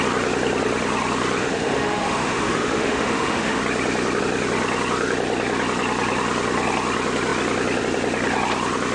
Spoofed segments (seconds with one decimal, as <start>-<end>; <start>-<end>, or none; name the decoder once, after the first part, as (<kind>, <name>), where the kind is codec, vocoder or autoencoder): 1.4-3.6 (autoencoder, DAC-VAE)